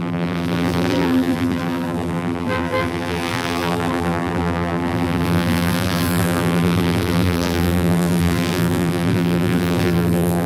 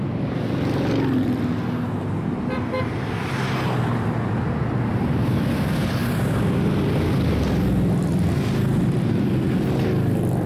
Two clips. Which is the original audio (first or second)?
second